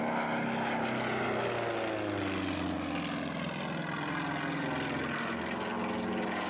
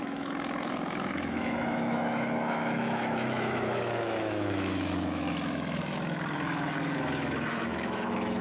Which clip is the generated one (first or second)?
second